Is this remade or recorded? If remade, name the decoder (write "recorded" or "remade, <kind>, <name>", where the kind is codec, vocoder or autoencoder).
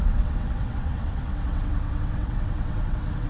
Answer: remade, vocoder, WaveNeXt